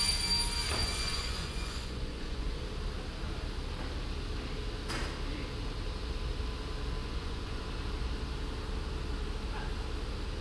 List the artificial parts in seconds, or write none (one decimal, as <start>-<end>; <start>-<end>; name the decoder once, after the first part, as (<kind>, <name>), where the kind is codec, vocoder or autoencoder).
0.8-2.6 (vocoder, Vocos); 7.0-7.6